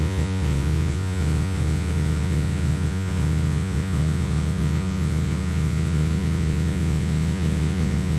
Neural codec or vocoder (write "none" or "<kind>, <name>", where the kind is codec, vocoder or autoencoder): vocoder, Vocos